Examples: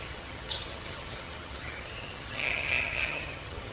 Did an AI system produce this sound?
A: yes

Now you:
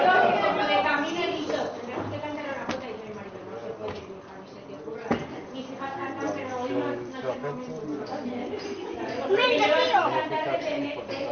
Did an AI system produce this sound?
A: no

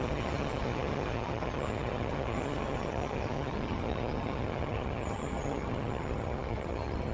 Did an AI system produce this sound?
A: yes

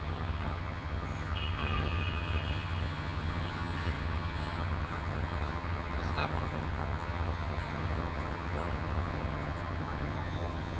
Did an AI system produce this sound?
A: yes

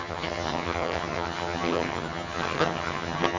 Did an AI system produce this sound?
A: yes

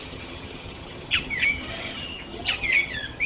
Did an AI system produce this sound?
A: yes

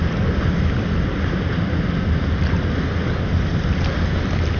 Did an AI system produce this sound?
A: no